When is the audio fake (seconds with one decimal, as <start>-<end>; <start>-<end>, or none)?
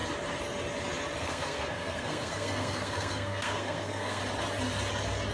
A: 1.2-4.2